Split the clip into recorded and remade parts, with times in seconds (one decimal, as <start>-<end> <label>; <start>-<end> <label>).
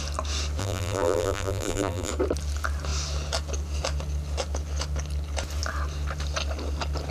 0.0-0.6 recorded; 0.6-2.1 remade; 2.1-7.1 recorded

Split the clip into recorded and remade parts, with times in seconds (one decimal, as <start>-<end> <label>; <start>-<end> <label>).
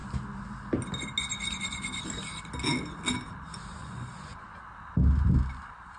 0.0-3.8 recorded; 3.8-4.6 remade; 4.6-6.0 recorded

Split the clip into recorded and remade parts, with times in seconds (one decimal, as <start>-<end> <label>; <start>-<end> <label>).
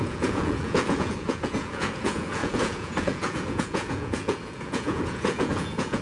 0.0-6.0 remade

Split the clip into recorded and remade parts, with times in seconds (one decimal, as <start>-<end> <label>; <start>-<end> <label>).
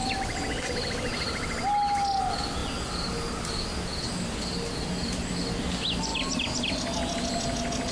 0.0-7.9 recorded